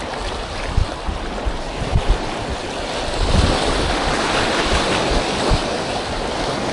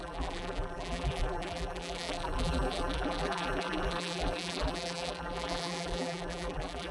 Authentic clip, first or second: first